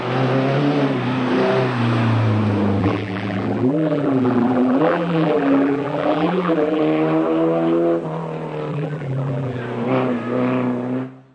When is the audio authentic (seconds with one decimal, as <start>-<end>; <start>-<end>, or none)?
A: 0.0-2.8; 6.8-8.7; 9.6-11.3